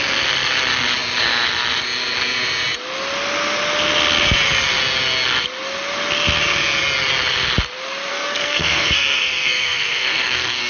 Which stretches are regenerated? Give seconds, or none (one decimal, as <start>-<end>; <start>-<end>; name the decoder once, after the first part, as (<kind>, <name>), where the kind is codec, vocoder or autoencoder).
8.1-10.7 (codec, SNAC)